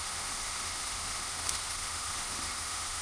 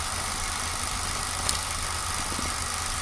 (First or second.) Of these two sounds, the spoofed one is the first